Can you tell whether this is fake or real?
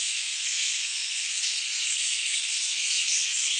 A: fake